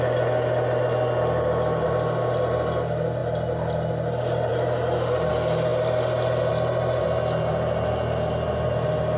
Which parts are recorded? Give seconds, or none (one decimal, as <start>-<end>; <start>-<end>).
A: 0.0-9.2